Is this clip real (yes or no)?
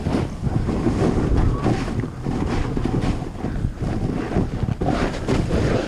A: yes